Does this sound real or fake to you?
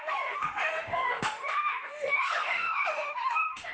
fake